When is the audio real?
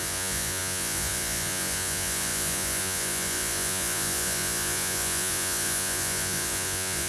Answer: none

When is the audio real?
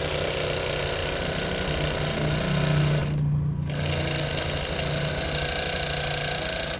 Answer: 0.0-6.8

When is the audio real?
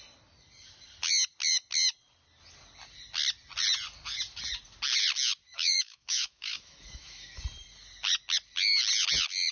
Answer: 0.0-5.5; 7.4-9.5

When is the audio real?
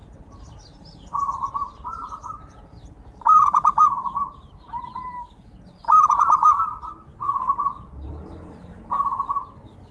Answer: 4.7-7.1; 9.2-9.9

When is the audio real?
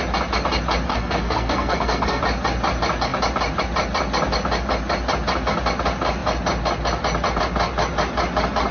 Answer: 0.0-0.9; 2.2-8.7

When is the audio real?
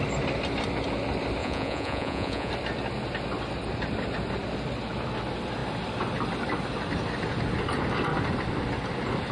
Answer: 0.0-1.4; 2.5-9.3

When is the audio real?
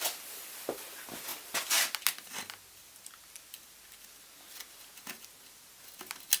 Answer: 0.0-6.4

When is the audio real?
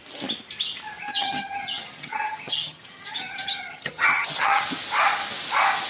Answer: 0.0-1.1; 4.6-5.9